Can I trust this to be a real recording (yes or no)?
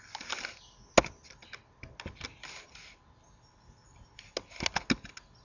yes